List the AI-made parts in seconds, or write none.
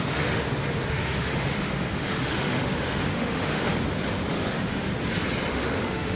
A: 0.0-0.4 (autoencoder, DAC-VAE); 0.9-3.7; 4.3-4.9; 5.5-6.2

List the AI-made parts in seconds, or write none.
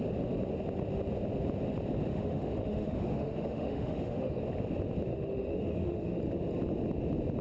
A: 2.1-4.4 (autoencoder, DAC-VAE); 5.1-6.2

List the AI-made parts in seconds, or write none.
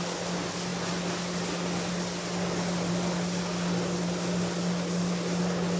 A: none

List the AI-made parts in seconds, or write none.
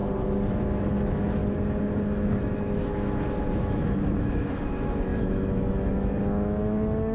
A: 0.6-1.4 (autoencoder, DAC-VAE); 2.4-7.1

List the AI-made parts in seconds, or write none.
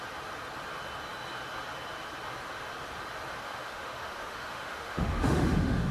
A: 3.4-5.9 (autoencoder, DAC-VAE)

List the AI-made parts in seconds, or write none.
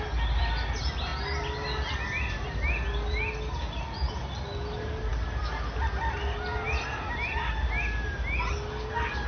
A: none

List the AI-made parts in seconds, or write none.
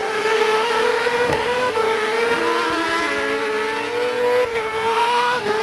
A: 0.0-2.4 (autoencoder, DAC-VAE); 4.5-5.6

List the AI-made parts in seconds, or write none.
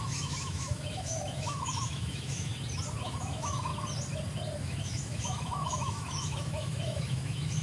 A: 0.0-2.5 (autoencoder, DAC-VAE); 3.0-3.7; 4.6-7.6